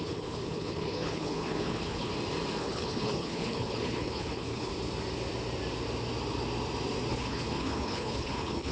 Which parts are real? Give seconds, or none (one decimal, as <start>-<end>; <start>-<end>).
2.1-2.6; 4.7-7.1